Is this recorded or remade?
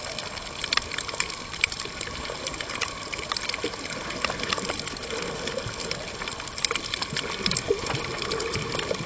recorded